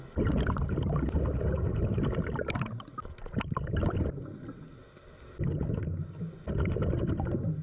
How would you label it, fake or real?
real